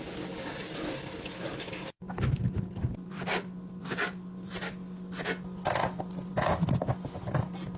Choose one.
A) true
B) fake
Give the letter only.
A